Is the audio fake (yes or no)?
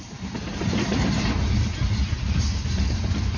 yes